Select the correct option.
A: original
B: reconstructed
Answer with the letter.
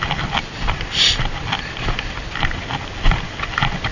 A